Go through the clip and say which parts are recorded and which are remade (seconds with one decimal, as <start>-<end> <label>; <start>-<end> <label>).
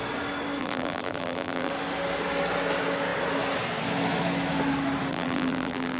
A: 0.0-0.6 recorded; 0.6-1.7 remade; 1.7-5.1 recorded; 5.1-6.0 remade